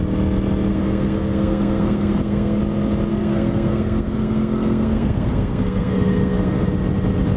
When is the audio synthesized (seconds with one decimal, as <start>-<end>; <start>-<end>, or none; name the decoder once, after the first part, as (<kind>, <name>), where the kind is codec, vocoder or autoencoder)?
0.7-2.6 (codec, SNAC); 3.1-6.7